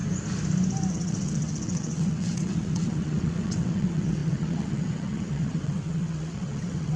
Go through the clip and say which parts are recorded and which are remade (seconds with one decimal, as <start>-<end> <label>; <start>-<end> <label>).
0.0-0.9 recorded; 0.9-7.0 remade